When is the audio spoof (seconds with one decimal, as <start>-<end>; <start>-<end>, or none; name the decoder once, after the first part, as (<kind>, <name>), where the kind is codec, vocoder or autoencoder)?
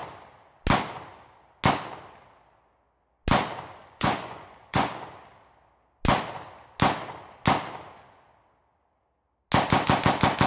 3.8-4.9 (vocoder, Vocos)